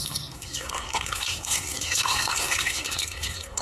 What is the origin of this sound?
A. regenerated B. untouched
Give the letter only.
A